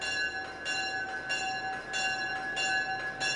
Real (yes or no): yes